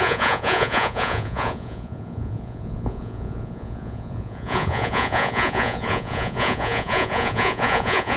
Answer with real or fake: fake